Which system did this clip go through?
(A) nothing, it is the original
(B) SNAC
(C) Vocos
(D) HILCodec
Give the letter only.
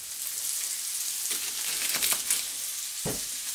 A